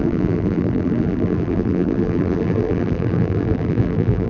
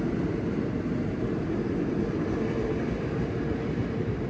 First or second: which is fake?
first